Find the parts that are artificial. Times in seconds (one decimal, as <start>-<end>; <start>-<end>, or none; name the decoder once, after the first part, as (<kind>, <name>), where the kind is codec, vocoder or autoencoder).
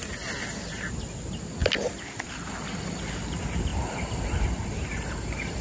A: none